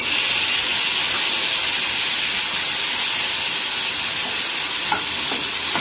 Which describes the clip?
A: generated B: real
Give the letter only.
B